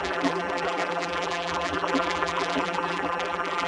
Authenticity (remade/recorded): remade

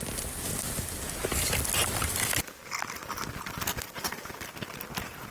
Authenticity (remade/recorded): recorded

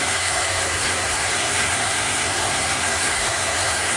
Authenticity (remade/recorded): remade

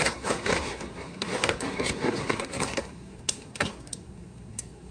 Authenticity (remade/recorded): remade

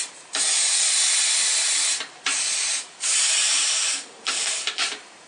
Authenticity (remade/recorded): remade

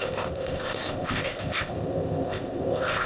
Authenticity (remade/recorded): remade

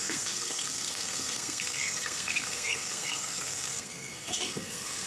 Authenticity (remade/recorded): remade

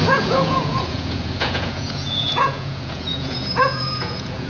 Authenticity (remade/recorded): remade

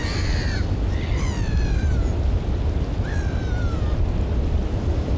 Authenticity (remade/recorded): recorded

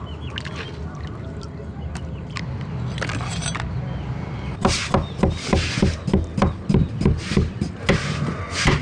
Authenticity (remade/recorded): recorded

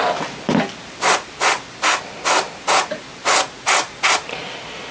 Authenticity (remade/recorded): recorded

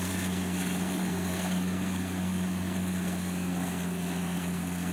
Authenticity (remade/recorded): remade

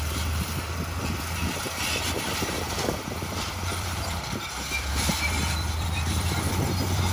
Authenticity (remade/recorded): remade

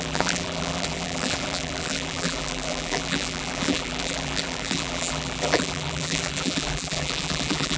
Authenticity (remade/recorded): remade